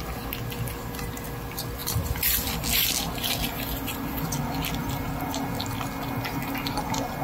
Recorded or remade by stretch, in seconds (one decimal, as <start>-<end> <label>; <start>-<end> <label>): 0.0-7.2 recorded